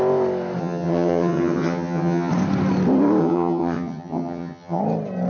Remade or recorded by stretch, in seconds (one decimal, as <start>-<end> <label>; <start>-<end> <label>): 0.0-0.6 recorded; 0.6-2.3 remade; 2.3-3.2 recorded; 3.2-4.8 remade; 4.8-5.3 recorded